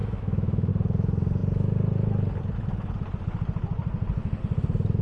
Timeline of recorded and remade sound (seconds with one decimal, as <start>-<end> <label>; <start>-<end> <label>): 0.0-0.7 remade; 0.7-5.0 recorded